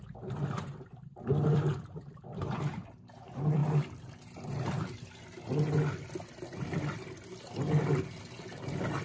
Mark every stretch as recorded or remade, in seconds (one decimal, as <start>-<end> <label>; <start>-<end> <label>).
0.0-9.0 recorded